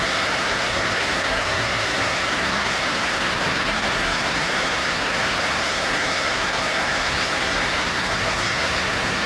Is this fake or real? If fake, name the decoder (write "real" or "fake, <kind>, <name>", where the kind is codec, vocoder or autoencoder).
fake, codec, SNAC